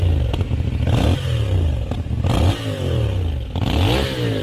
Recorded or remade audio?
recorded